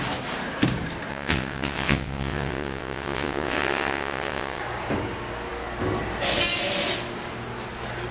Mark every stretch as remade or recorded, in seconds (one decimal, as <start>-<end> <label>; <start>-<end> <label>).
0.0-1.1 recorded; 1.1-4.6 remade; 4.6-8.1 recorded